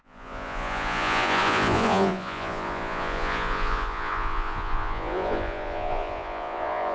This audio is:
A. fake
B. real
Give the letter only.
A